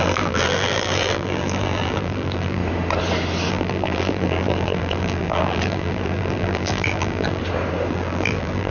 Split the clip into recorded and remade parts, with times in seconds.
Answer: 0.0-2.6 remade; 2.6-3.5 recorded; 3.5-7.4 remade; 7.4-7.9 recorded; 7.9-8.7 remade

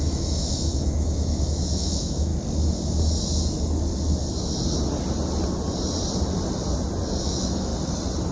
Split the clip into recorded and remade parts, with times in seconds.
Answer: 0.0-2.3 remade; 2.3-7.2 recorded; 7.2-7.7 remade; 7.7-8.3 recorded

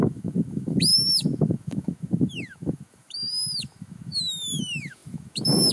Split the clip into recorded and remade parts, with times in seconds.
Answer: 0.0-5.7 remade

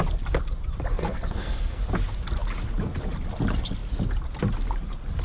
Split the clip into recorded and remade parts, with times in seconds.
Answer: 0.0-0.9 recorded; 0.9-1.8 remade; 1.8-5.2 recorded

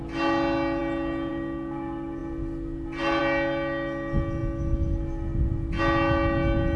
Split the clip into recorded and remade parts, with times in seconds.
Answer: 0.0-6.8 recorded

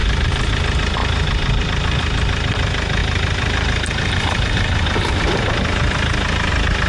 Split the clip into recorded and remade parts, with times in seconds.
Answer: 0.0-1.0 recorded; 1.0-1.6 remade; 1.6-3.0 recorded; 3.0-6.5 remade; 6.5-6.9 recorded